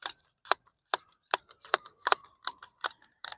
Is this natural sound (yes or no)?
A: no